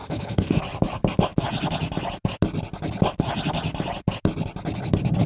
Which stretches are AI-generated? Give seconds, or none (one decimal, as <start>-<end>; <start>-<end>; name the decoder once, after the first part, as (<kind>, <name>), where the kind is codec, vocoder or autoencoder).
0.0-0.6 (autoencoder, DAC-VAE)